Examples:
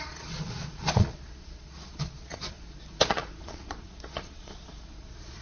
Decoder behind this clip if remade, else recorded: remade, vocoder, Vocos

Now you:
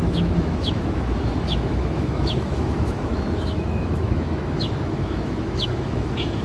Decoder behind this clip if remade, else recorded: remade, autoencoder, DAC-VAE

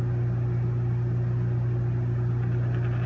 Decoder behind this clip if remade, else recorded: recorded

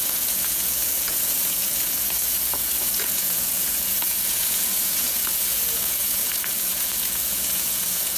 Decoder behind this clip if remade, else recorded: remade, vocoder, Vocos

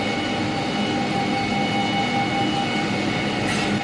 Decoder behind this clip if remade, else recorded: recorded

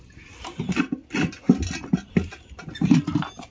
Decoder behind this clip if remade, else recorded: recorded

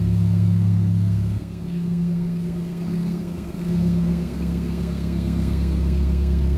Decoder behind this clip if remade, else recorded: remade, codec, SNAC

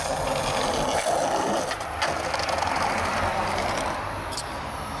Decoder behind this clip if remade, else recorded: recorded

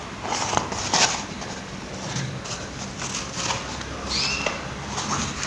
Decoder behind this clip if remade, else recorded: recorded